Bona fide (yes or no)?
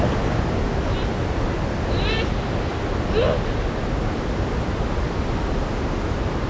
yes